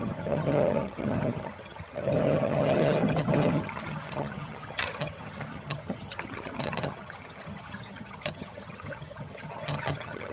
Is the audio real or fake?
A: fake